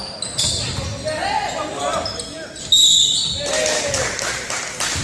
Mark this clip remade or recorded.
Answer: recorded